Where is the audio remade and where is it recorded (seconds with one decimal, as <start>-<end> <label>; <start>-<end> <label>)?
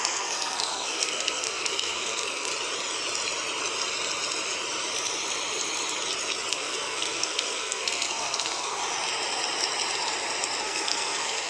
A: 0.0-2.5 remade; 2.5-6.5 recorded; 6.5-8.8 remade; 8.8-10.6 recorded; 10.6-11.5 remade